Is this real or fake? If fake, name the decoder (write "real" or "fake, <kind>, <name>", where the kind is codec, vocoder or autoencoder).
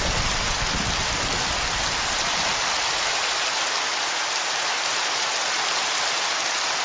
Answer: real